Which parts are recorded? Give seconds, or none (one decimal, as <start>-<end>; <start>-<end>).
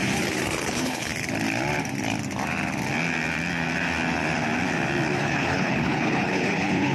0.0-0.6; 1.1-5.2